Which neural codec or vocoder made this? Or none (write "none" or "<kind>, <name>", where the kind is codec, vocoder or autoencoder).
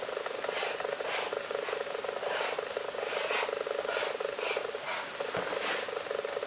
none